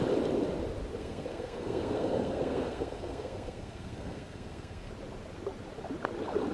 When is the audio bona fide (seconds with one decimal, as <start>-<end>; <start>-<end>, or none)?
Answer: 0.0-1.0; 4.9-6.5